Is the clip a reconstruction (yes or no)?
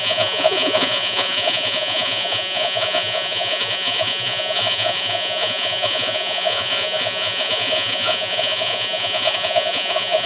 yes